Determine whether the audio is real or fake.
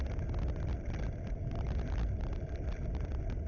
real